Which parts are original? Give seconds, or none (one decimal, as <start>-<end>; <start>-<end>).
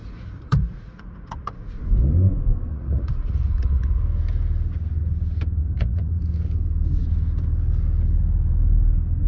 1.8-2.7; 4.0-5.6; 6.2-9.3